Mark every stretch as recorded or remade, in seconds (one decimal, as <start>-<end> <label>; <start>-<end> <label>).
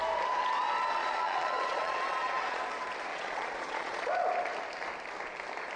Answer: 0.0-1.0 recorded; 1.0-2.6 remade; 2.6-3.1 recorded; 3.1-4.1 remade; 4.1-5.8 recorded